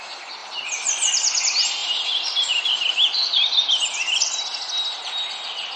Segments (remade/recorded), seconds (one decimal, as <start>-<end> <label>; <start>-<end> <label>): 0.0-0.4 recorded; 0.4-1.1 remade; 1.1-1.8 recorded; 1.8-4.2 remade; 4.2-5.8 recorded